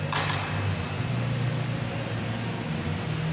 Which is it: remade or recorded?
recorded